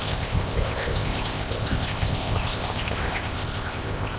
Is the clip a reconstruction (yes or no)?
yes